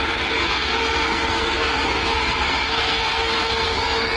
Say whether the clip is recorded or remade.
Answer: remade